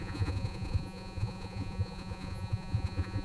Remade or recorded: remade